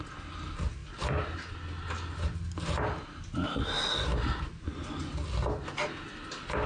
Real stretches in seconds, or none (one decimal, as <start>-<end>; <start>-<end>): 0.0-6.7